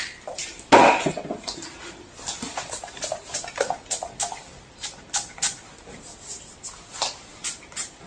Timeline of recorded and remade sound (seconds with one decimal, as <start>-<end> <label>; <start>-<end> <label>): 0.0-8.1 recorded